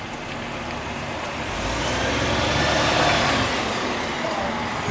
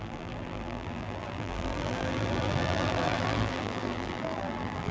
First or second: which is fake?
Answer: second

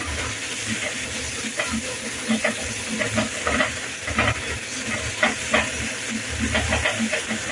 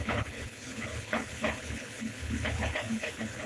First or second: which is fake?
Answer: second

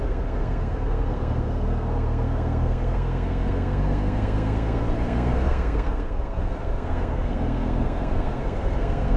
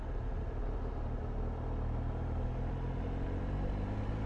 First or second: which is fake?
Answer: first